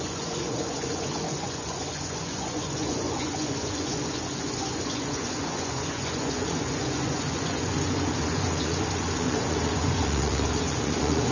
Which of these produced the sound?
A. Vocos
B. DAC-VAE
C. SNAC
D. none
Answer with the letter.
A